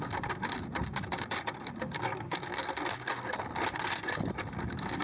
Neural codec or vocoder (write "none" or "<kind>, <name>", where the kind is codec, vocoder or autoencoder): none